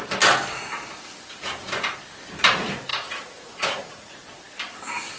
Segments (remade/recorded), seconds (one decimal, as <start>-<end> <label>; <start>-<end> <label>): 0.0-2.9 recorded; 2.9-4.1 remade; 4.1-5.2 recorded